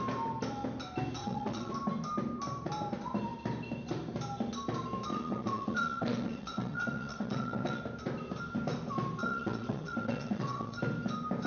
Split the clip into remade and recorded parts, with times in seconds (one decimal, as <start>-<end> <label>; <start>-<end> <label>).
0.0-1.2 recorded; 1.2-1.7 remade; 1.7-5.1 recorded; 5.1-7.8 remade; 7.8-9.2 recorded; 9.2-10.8 remade; 10.8-11.5 recorded